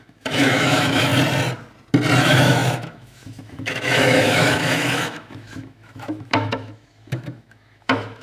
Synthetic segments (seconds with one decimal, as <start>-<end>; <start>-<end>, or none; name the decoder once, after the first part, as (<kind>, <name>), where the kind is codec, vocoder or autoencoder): 0.0-1.1 (autoencoder, DAC-VAE); 2.2-8.2